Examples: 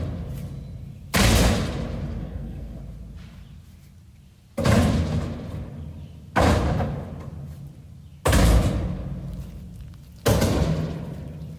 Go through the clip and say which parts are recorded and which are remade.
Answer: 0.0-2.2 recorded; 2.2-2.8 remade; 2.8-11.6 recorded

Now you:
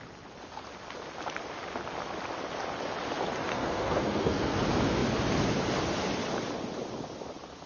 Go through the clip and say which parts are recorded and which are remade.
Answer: 0.0-3.5 recorded; 3.5-4.6 remade; 4.6-7.7 recorded

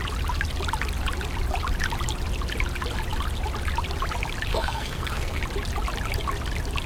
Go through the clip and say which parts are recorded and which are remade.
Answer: 0.0-4.5 recorded; 4.5-5.4 remade; 5.4-6.9 recorded

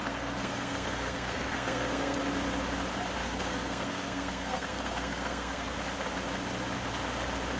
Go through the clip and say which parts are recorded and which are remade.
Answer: 0.0-2.2 remade; 2.2-3.2 recorded; 3.2-5.8 remade; 5.8-7.6 recorded

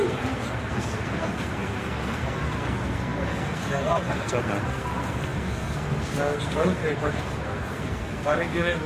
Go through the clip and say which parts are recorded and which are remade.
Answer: 0.0-8.9 remade

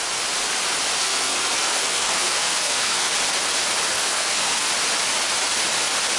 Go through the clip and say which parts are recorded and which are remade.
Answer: 0.0-1.0 recorded; 1.0-3.1 remade; 3.1-3.9 recorded; 3.9-4.7 remade; 4.7-6.2 recorded

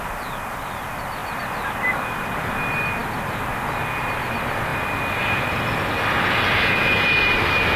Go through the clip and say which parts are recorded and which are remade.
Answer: 0.0-7.8 recorded